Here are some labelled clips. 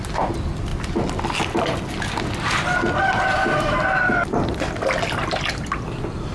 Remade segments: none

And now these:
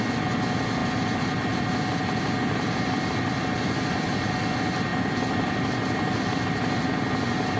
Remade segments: 0.8-4.3; 4.9-6.4